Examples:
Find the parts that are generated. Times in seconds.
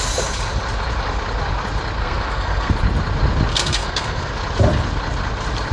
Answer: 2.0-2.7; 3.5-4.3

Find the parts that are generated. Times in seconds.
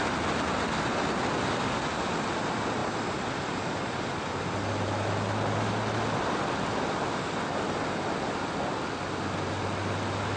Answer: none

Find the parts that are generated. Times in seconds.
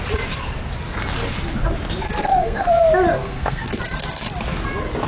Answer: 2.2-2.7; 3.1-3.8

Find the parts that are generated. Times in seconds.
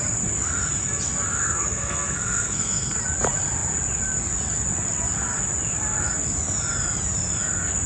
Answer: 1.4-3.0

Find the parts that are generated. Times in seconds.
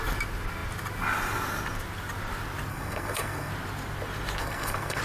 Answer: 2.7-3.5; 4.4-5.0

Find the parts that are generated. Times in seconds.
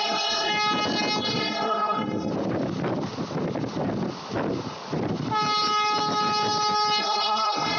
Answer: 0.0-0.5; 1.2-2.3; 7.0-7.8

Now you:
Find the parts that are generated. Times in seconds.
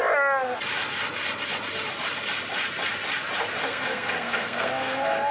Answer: 3.6-5.3